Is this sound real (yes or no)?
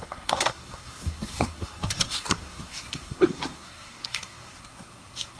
no